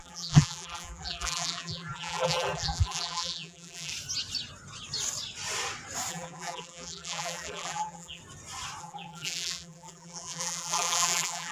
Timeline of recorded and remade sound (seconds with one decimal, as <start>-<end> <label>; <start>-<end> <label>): 0.0-3.9 remade; 3.9-6.1 recorded; 6.1-8.2 remade; 8.2-8.8 recorded; 8.8-11.5 remade